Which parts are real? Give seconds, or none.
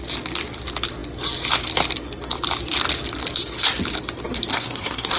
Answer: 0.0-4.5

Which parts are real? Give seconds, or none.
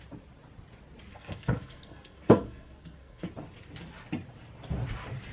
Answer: 0.0-1.1; 3.3-5.3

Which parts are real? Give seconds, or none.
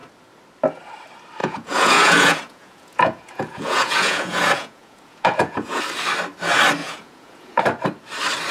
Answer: 0.0-1.4; 5.8-6.8; 7.6-8.5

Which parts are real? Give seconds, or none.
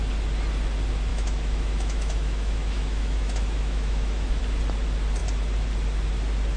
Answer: 0.0-1.1; 4.4-6.6